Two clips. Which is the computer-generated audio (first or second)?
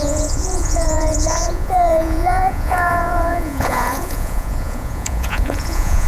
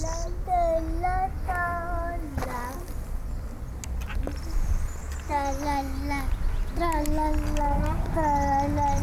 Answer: first